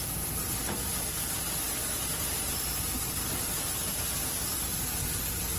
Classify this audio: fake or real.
real